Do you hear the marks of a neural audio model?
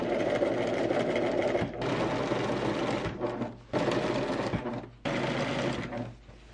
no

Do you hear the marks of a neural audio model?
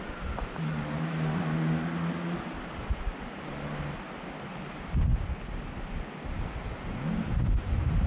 no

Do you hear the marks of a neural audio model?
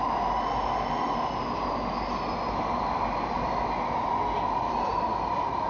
no